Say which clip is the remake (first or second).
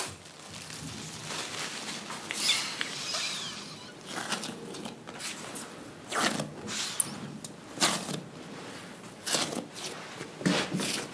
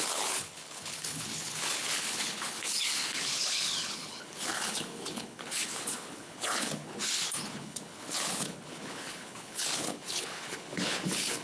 second